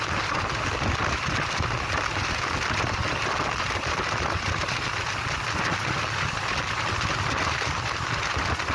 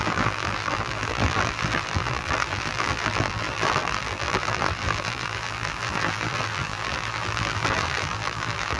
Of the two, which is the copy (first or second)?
second